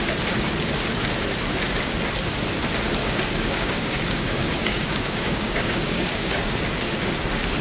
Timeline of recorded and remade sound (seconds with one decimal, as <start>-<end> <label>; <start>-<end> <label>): 0.0-3.0 recorded; 3.0-6.6 remade; 6.6-7.6 recorded